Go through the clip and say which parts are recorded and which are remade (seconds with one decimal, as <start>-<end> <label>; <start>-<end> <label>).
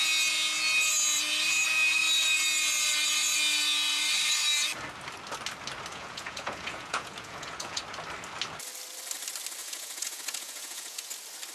0.0-5.9 recorded; 5.9-7.8 remade; 7.8-9.6 recorded; 9.6-11.1 remade; 11.1-11.5 recorded